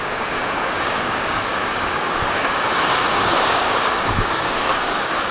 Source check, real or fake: fake